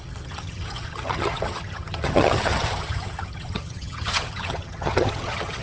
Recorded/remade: remade